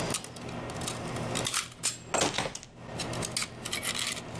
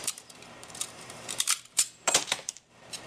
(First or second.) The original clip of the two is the first